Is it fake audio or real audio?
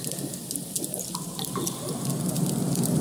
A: real